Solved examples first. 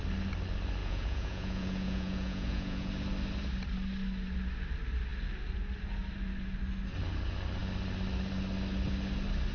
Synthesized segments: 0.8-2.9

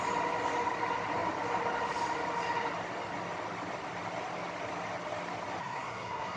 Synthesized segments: 5.6-6.4

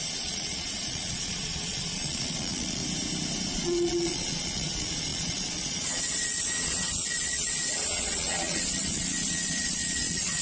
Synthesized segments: 0.0-2.8; 3.5-10.4